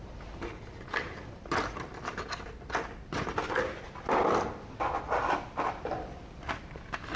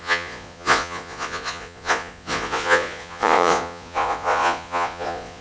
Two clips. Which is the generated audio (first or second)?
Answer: second